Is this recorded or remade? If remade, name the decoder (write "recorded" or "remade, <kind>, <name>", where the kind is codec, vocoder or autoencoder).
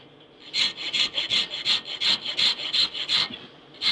recorded